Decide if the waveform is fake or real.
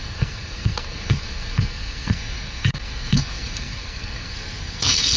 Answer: fake